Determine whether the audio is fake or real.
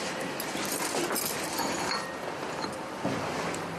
real